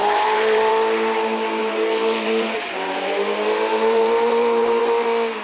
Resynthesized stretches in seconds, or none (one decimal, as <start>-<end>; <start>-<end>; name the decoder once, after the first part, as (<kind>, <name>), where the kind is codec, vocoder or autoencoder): 0.0-0.7 (vocoder, BigVGAN v2); 1.6-4.8